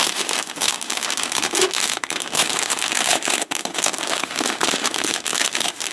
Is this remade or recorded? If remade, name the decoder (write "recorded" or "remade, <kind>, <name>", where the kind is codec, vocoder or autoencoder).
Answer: remade, autoencoder, DAC-VAE